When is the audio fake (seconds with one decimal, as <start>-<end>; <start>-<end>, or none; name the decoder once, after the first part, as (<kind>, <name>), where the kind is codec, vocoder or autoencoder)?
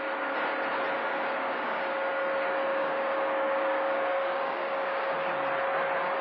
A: 1.0-1.8 (codec, DAC); 2.7-5.1